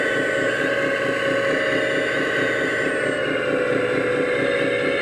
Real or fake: real